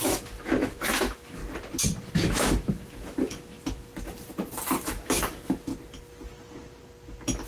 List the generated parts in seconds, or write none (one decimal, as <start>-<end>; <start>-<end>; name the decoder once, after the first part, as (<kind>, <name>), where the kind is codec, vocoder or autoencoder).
0.0-1.4 (autoencoder, DAC-VAE); 2.1-3.9; 4.8-5.7